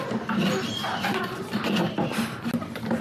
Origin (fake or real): real